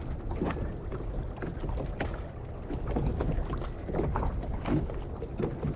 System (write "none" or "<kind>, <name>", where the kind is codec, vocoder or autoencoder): none